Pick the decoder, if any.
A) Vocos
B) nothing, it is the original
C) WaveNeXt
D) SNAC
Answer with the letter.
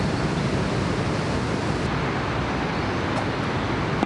B